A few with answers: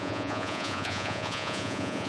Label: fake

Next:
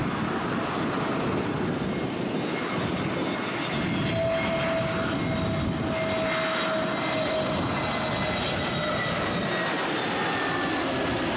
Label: real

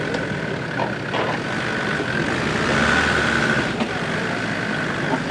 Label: real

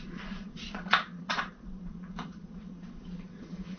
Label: fake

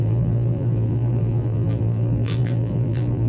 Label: fake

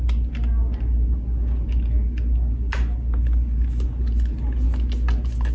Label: real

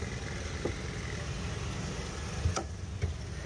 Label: real